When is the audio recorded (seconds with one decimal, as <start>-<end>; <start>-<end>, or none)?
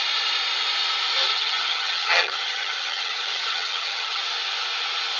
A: 0.0-1.3; 4.2-5.2